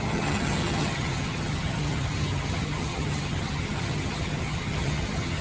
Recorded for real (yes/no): no